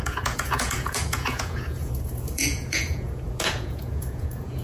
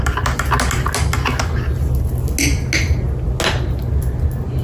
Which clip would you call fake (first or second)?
first